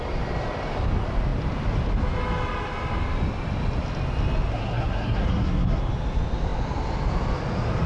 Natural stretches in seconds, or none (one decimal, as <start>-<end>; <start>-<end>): 0.0-4.5; 5.9-7.9